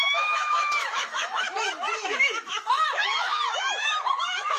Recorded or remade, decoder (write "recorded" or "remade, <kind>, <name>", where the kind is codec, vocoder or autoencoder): remade, autoencoder, DAC-VAE